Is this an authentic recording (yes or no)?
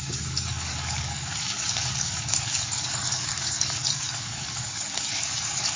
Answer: no